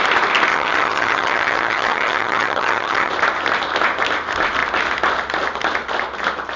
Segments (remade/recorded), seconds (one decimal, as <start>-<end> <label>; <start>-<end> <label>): 0.0-0.5 recorded; 0.5-3.1 remade; 3.1-6.6 recorded